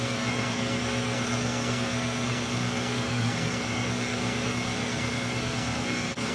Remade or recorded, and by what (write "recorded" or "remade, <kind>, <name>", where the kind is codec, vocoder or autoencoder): remade, codec, SNAC